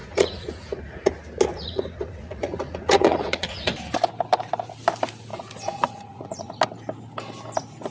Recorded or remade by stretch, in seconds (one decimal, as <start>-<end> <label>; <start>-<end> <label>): 0.0-1.1 remade; 1.1-1.5 recorded; 1.5-3.7 remade; 3.7-5.3 recorded; 5.3-6.5 remade; 6.5-7.9 recorded